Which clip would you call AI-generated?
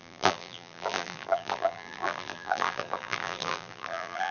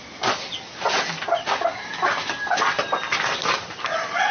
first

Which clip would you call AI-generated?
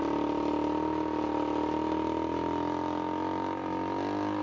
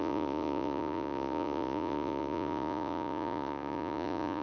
second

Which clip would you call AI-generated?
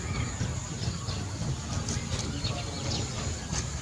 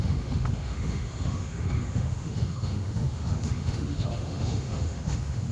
second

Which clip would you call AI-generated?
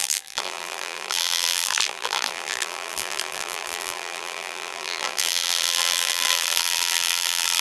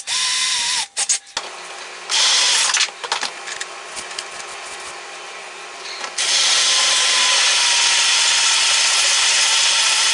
first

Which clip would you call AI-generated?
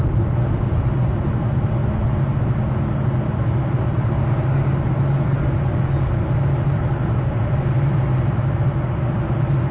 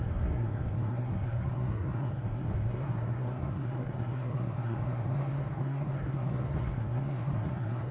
second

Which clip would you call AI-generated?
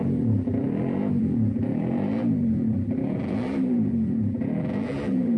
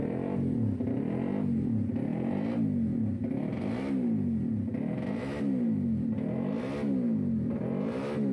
first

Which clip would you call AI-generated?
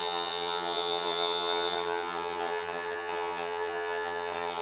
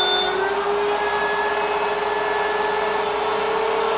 first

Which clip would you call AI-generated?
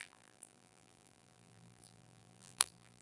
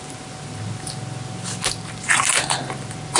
first